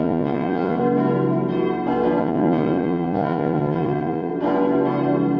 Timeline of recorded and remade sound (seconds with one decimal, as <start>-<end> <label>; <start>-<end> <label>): 0.0-0.8 remade; 0.8-2.2 recorded; 2.2-4.3 remade; 4.3-5.4 recorded